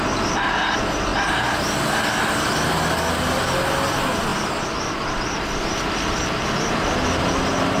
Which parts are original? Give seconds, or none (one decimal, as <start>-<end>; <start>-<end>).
0.0-7.8